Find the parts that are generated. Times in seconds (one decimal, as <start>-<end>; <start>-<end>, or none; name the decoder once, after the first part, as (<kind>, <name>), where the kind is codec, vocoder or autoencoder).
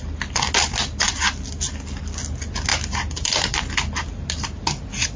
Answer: none